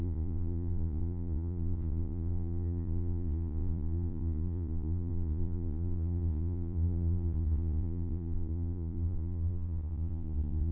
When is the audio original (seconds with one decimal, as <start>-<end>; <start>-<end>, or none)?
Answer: none